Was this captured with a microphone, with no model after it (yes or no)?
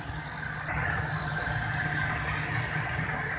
yes